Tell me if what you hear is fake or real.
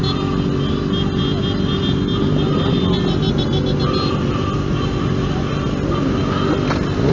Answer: real